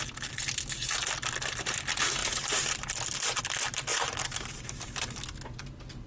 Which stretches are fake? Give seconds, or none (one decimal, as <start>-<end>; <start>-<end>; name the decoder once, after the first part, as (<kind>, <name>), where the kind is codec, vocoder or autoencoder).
2.2-3.4 (vocoder, BigVGAN v2); 3.9-4.6